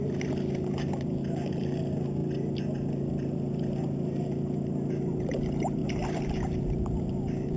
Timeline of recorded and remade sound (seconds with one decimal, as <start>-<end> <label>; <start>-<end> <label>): 0.0-5.8 recorded; 5.8-7.6 remade